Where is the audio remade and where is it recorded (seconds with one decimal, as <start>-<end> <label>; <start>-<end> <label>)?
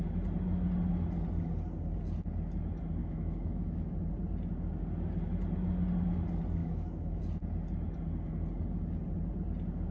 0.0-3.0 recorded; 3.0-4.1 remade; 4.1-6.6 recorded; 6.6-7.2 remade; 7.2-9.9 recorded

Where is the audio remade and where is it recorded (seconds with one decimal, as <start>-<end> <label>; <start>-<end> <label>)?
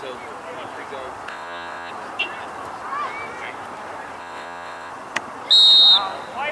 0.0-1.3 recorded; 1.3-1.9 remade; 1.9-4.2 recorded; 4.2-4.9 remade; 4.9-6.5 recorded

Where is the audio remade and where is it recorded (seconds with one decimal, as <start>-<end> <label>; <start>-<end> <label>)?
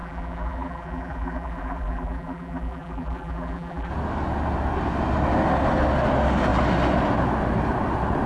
0.0-3.9 remade; 3.9-8.3 recorded